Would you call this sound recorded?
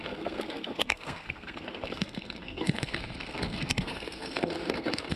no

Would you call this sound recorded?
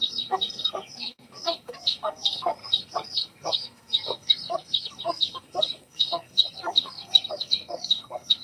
no